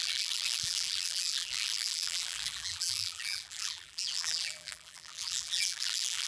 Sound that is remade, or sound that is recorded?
remade